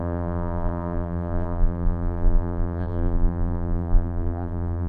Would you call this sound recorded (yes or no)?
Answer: no